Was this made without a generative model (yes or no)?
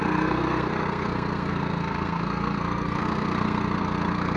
no